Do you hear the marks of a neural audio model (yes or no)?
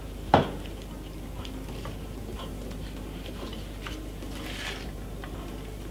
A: yes